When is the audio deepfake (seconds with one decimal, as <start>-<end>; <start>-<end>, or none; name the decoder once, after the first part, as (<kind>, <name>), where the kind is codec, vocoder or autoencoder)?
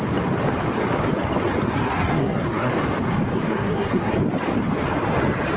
1.6-2.7 (codec, SNAC); 3.3-4.1